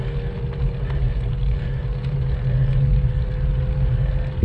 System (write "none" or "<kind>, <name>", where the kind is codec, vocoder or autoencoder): none